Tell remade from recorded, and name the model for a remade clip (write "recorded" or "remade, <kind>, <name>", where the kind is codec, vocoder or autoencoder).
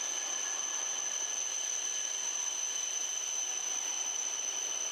recorded